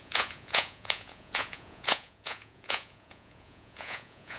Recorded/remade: remade